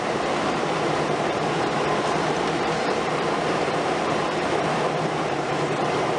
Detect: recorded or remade remade